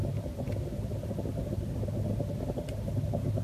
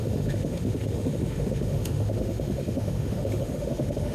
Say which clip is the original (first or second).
first